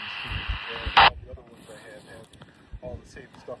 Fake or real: real